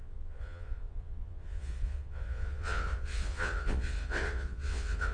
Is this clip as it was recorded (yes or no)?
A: no